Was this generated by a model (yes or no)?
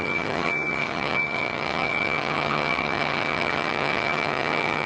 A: yes